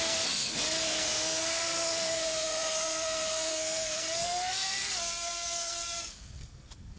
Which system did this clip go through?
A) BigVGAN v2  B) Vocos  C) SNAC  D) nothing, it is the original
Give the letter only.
C